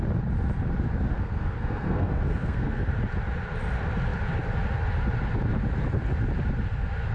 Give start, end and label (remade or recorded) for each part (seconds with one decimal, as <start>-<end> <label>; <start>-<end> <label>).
0.0-1.1 recorded; 1.1-2.9 remade; 2.9-7.1 recorded